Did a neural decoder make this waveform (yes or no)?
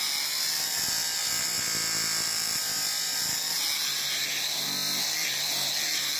no